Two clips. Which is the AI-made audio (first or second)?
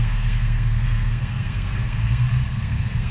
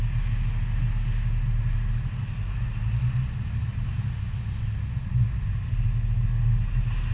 first